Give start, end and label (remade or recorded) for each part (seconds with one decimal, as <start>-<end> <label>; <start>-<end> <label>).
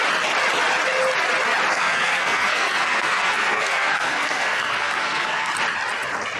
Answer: 0.0-1.7 recorded; 1.7-5.5 remade; 5.5-6.4 recorded